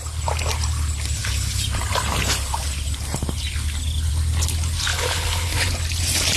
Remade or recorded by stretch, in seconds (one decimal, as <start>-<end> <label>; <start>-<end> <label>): 0.0-4.9 recorded; 4.9-5.7 remade; 5.7-6.4 recorded